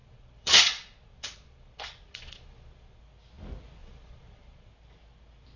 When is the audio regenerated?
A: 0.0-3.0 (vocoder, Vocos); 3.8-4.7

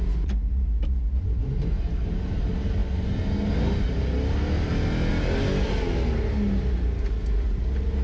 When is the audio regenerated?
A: none

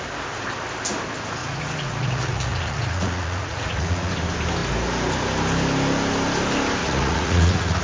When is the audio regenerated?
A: 1.4-4.1 (vocoder, Vocos); 6.8-7.8

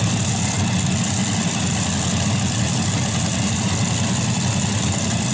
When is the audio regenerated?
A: none

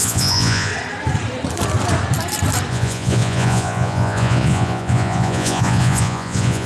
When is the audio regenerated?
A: 0.0-0.7 (vocoder, Vocos); 2.7-6.7

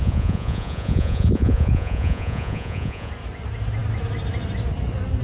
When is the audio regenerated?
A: 0.0-3.1 (vocoder, Vocos)